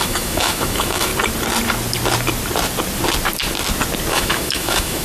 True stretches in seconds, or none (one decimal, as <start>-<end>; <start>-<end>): 1.1-4.1